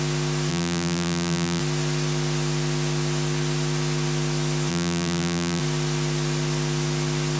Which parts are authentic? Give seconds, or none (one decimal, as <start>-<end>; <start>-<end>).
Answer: 0.0-0.5; 1.6-4.7; 5.6-7.4